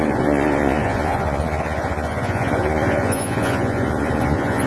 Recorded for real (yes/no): no